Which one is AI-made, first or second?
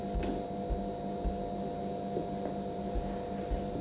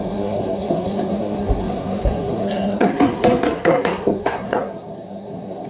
second